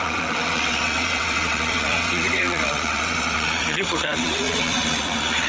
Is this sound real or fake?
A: fake